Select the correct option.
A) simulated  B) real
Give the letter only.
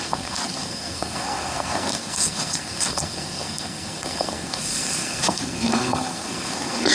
A